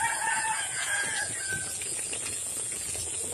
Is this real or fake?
fake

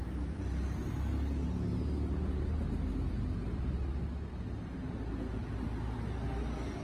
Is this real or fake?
real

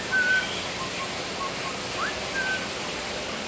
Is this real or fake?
real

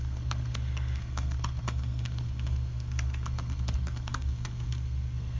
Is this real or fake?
fake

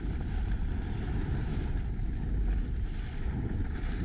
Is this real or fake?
real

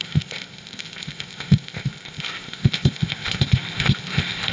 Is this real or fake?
fake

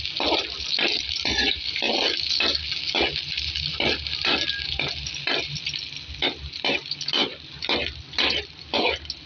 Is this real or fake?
real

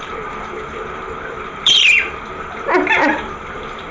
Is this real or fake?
fake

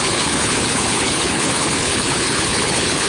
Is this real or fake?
fake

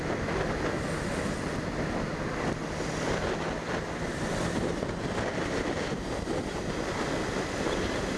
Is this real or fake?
real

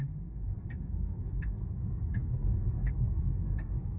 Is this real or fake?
fake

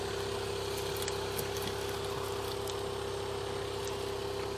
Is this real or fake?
real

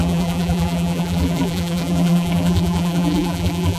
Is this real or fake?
fake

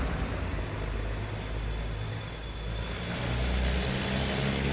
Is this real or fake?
real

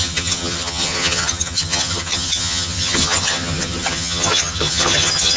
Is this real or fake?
fake